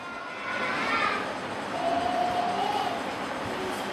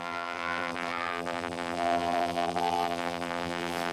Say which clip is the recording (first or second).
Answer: first